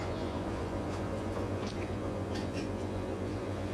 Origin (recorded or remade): remade